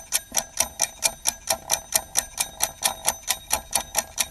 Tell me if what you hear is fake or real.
real